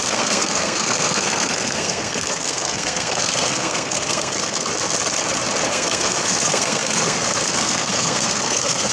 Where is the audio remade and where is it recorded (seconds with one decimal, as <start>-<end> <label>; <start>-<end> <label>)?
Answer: 0.0-4.7 remade; 4.7-5.7 recorded; 5.7-8.9 remade